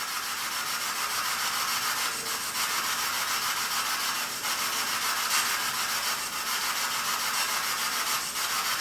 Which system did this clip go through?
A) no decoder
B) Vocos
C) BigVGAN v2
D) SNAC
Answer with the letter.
A